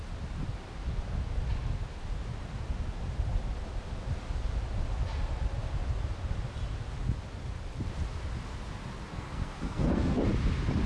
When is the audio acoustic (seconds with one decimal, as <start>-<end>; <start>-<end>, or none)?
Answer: 0.0-9.1; 10.2-10.9